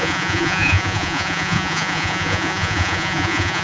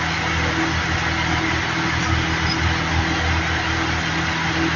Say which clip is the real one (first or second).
second